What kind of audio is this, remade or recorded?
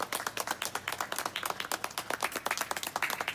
recorded